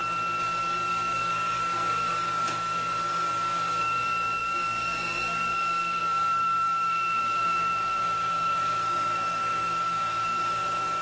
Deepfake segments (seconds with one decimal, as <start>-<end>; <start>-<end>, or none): 0.6-11.0